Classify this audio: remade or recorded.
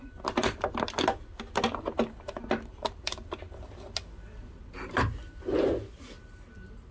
recorded